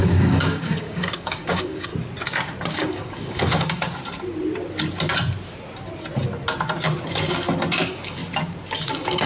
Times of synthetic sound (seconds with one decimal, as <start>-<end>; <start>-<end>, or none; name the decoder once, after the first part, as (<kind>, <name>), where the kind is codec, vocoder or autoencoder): 0.0-1.9 (codec, DAC); 2.7-3.8; 7.7-8.2; 8.9-9.3